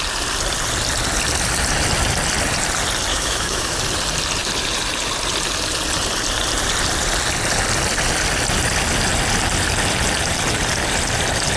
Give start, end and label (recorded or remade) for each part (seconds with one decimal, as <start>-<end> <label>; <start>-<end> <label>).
0.0-3.1 recorded; 3.1-3.8 remade; 3.8-11.6 recorded